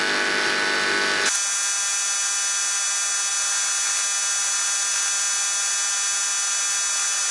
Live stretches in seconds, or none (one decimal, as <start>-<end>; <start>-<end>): 0.0-7.3